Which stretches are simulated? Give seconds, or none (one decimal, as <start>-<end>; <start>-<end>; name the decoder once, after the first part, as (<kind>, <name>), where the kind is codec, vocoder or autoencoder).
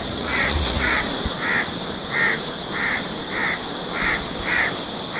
0.0-1.0 (vocoder, Vocos)